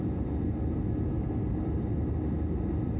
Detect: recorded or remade recorded